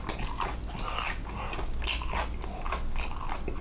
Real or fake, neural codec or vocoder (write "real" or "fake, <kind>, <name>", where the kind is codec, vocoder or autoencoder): real